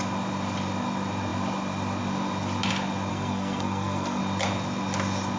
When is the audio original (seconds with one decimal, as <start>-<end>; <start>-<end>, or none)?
0.0-3.1; 4.2-5.4